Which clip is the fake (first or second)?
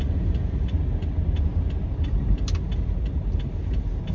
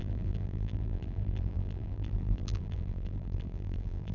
second